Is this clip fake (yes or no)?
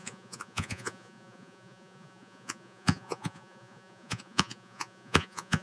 yes